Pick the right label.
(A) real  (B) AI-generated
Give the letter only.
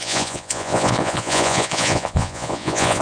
B